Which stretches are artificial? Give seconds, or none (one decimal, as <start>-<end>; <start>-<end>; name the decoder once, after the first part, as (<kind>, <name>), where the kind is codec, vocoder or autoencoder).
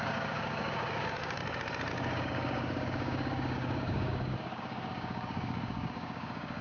0.0-1.4 (codec, DAC); 1.9-6.6